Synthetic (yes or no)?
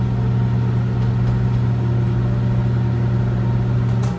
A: no